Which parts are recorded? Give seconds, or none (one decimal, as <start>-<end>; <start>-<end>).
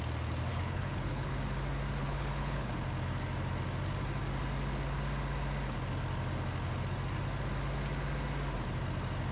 0.0-0.5; 1.3-2.0; 2.7-9.3